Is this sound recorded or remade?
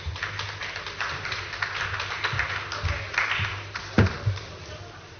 recorded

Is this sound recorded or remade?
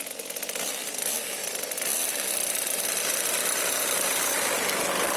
recorded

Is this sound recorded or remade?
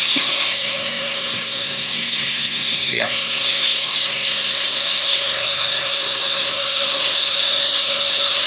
remade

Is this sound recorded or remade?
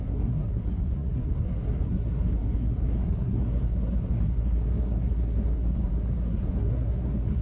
remade